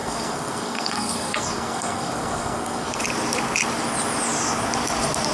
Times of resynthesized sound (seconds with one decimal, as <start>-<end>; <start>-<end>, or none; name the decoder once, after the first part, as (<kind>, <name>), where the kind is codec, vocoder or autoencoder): 0.0-3.0 (codec, SNAC)

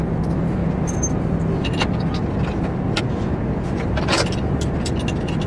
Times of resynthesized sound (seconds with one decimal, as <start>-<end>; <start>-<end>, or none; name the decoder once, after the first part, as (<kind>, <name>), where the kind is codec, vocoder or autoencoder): none